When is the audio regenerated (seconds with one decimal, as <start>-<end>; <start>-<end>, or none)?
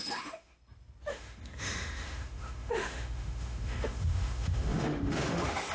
0.0-0.6; 1.1-5.7